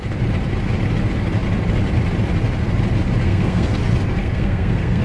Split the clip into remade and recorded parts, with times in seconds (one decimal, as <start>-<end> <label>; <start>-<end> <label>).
0.0-3.2 recorded; 3.2-3.8 remade; 3.8-4.2 recorded; 4.2-5.0 remade